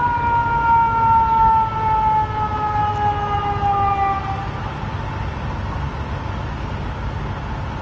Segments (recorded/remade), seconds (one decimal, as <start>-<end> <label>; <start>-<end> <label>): 0.0-7.8 recorded